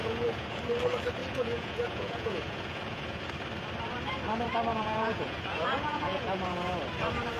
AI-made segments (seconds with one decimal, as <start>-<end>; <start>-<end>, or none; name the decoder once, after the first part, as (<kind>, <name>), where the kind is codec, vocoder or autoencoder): 0.0-0.6 (vocoder, Vocos); 1.2-3.2; 4.7-6.8